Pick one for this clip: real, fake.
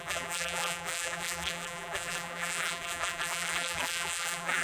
fake